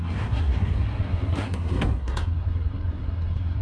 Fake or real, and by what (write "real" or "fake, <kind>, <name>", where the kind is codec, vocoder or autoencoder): fake, codec, SNAC